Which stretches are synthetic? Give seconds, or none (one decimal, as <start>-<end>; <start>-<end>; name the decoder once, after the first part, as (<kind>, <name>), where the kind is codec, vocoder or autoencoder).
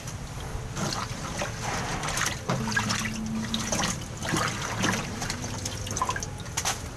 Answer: none